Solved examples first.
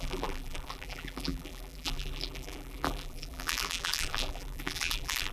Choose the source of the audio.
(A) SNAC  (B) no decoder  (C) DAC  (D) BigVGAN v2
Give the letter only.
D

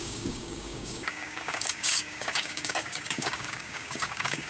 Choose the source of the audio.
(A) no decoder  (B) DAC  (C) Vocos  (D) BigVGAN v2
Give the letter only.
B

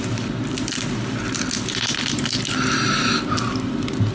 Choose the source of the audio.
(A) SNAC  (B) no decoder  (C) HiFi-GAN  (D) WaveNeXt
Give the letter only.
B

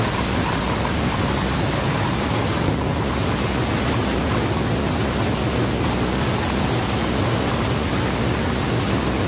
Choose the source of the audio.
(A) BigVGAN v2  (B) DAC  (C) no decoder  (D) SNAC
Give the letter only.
C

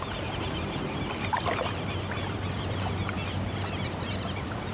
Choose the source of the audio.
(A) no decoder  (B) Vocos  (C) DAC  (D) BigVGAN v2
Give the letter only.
D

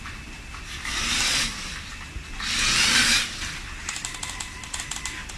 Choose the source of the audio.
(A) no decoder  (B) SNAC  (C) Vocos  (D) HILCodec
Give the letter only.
A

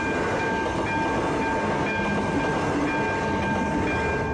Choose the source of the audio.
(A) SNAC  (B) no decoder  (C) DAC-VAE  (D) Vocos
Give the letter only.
B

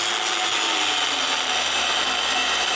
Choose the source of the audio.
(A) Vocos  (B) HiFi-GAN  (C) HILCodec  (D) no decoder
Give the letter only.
D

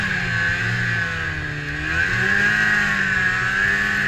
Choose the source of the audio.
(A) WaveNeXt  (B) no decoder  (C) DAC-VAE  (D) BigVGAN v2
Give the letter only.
B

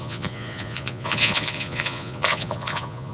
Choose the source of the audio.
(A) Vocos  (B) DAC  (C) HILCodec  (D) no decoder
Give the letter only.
A